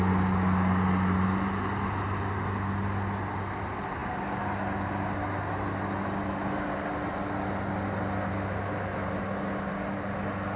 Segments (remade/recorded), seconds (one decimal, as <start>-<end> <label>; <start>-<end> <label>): 0.0-10.6 recorded

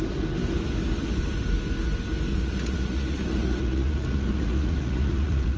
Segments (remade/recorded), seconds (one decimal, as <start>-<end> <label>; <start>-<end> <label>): 0.0-2.3 recorded; 2.3-5.6 remade